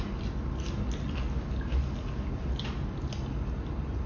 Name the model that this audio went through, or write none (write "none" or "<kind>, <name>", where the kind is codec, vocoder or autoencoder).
none